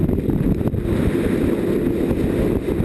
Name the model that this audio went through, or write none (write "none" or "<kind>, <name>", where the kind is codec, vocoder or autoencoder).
none